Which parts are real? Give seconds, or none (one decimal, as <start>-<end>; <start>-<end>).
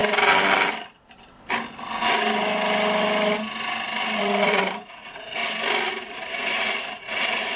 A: 0.0-4.2; 5.4-6.0